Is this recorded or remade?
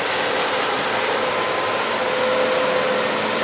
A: recorded